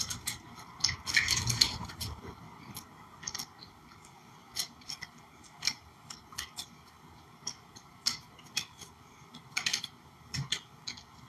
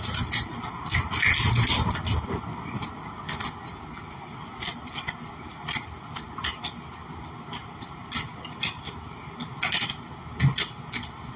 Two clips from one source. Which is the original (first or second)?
second